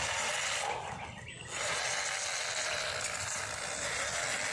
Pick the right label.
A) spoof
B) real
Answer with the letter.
B